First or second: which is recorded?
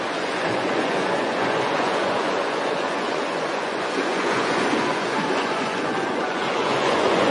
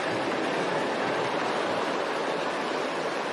second